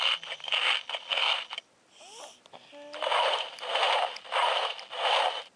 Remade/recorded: recorded